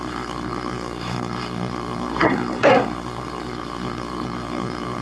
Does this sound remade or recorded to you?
remade